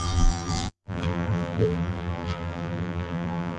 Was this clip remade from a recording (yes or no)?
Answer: yes